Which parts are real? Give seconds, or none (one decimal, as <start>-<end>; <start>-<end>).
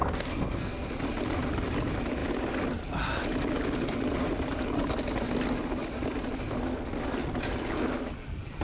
0.8-8.6